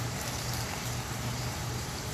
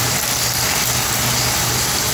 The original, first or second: second